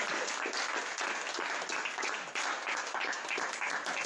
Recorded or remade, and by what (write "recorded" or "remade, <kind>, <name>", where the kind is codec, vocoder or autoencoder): recorded